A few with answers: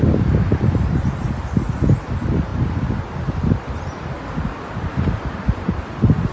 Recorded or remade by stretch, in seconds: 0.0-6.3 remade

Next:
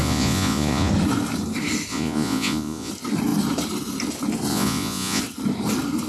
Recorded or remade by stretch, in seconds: 0.0-0.9 remade; 0.9-1.9 recorded; 1.9-2.9 remade; 2.9-4.5 recorded; 4.5-5.2 remade; 5.2-6.1 recorded

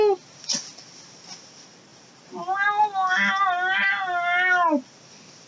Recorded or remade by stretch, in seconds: 0.0-5.5 recorded

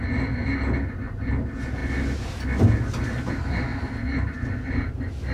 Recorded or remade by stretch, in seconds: 0.0-5.3 recorded